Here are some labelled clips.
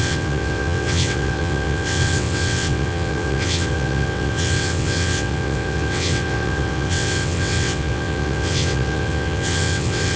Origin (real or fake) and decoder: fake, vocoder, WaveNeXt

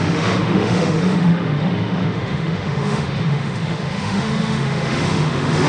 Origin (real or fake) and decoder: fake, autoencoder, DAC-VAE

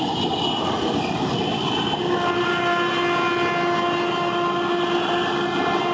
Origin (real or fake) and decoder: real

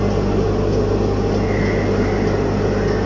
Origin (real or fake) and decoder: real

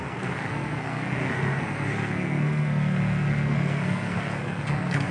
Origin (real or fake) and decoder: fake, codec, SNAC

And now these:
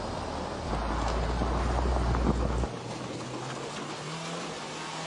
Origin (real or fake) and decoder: real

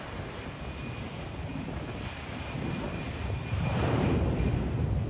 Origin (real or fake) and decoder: real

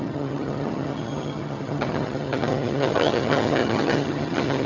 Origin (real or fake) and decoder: fake, vocoder, HiFi-GAN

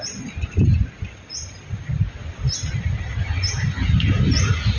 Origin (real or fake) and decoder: real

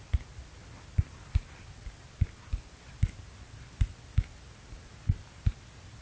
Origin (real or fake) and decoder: real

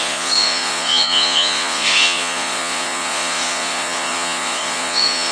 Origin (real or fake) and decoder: fake, vocoder, Vocos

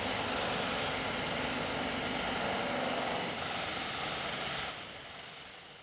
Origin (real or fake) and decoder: real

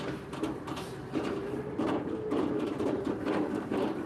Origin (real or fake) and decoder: fake, vocoder, BigVGAN v2